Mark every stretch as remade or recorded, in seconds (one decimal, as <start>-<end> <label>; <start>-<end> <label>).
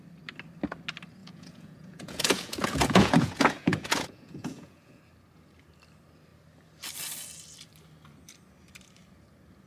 0.0-1.2 recorded; 1.2-5.0 remade; 5.0-9.7 recorded